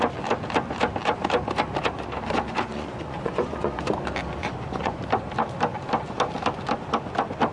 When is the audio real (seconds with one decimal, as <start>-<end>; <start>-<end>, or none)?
0.0-2.7; 3.8-4.4; 5.0-7.5